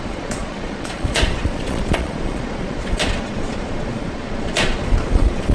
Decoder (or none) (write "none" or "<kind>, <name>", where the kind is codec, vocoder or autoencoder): vocoder, Vocos